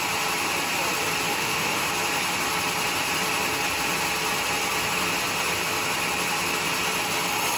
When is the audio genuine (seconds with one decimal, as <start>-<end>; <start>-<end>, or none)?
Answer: 0.0-1.3; 1.9-7.6